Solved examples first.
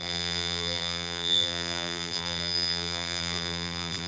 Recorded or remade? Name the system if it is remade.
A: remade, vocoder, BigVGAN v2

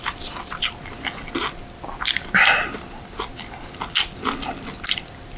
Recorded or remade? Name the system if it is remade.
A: recorded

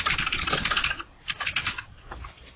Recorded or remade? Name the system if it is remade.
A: remade, vocoder, BigVGAN v2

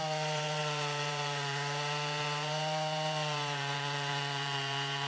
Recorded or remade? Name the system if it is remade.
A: remade, vocoder, BigVGAN v2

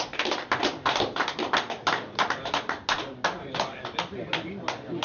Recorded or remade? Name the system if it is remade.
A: recorded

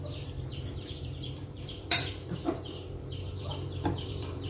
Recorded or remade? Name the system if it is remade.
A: remade, vocoder, BigVGAN v2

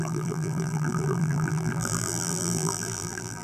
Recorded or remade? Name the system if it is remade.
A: remade, vocoder, BigVGAN v2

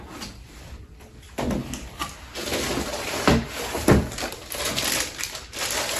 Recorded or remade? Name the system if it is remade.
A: remade, vocoder, BigVGAN v2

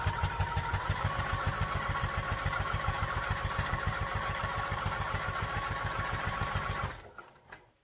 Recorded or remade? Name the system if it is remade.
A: remade, vocoder, BigVGAN v2